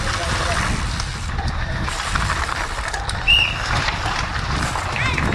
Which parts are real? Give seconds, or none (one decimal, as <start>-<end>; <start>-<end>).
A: 0.0-1.1; 4.3-5.3